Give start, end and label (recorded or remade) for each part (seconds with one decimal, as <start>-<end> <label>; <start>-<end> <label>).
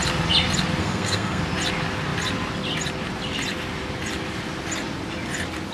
0.0-0.8 recorded; 0.8-1.4 remade; 1.4-5.7 recorded